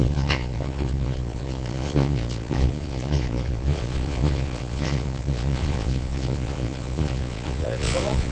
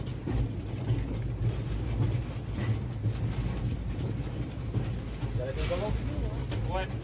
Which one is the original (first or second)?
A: second